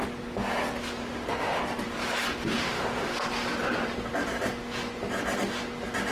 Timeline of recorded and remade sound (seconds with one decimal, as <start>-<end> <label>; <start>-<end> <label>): 0.0-1.0 recorded; 1.0-1.6 remade; 1.6-2.5 recorded; 2.5-3.1 remade; 3.1-6.1 recorded